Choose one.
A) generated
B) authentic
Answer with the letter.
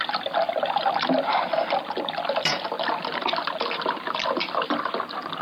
B